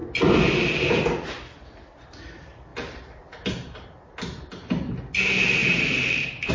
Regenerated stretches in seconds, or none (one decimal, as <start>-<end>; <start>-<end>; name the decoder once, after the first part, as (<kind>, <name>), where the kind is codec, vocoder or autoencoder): 2.7-3.5 (vocoder, BigVGAN v2); 5.6-6.5